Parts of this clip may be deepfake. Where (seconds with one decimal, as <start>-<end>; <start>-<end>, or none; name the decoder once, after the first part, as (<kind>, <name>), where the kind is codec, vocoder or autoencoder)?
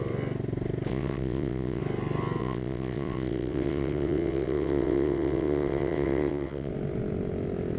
0.9-1.8 (vocoder, WaveNeXt); 2.4-6.7